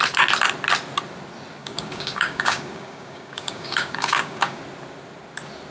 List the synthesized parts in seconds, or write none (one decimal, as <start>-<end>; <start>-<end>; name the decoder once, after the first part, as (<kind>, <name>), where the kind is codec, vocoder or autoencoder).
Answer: 1.6-4.6 (codec, DAC)